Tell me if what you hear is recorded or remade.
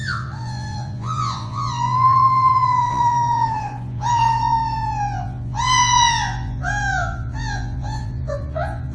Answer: remade